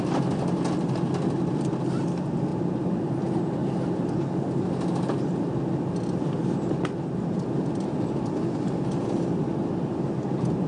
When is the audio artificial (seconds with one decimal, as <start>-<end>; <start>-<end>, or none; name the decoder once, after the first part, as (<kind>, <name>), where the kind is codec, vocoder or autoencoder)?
none